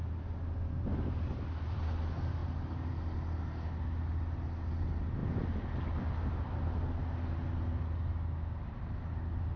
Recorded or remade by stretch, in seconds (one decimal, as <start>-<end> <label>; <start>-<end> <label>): 0.0-9.6 recorded